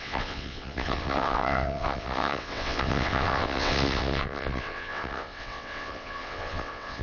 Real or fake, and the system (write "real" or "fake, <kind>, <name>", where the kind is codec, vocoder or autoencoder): fake, vocoder, WaveNeXt